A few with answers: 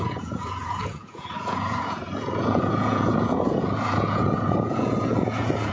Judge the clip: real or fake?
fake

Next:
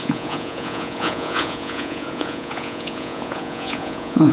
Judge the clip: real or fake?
fake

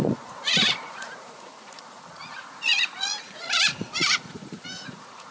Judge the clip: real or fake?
fake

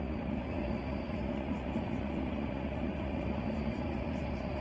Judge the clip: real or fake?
fake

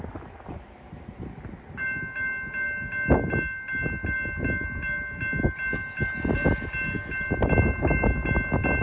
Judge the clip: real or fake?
real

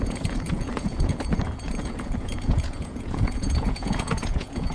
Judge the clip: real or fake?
fake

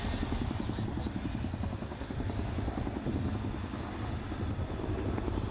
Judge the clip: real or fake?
real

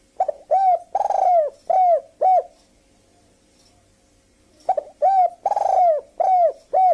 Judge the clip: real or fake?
real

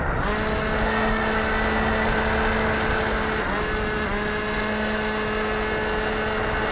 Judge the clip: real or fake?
real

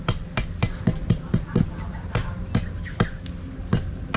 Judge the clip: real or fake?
real